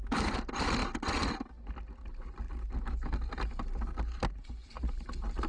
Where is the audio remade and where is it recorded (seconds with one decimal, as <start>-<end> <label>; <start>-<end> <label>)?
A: 0.0-5.5 recorded